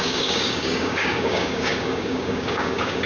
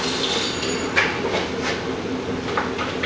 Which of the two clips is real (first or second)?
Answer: second